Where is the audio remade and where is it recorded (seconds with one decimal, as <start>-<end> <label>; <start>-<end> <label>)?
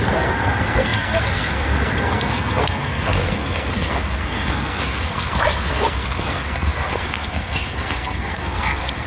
0.0-9.1 remade